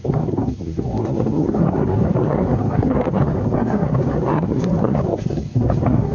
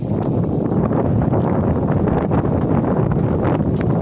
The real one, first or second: second